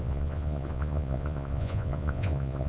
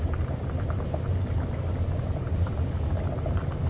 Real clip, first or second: second